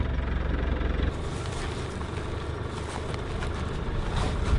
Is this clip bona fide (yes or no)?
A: yes